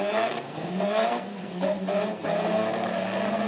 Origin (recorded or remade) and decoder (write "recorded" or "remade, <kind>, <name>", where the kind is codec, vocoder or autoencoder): remade, codec, SNAC